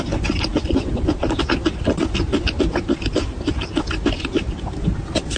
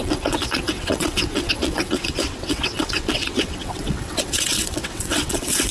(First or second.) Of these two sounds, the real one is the first